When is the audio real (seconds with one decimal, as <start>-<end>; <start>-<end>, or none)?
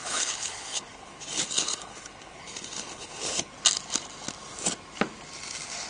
3.5-5.9